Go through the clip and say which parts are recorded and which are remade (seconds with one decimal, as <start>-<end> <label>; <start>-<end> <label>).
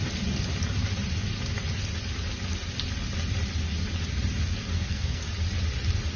0.0-4.7 recorded; 4.7-5.2 remade; 5.2-6.2 recorded